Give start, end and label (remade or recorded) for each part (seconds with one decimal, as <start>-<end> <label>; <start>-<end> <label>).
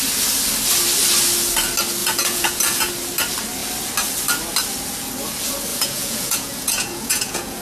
0.0-2.0 recorded; 2.0-2.9 remade; 2.9-5.7 recorded; 5.7-7.6 remade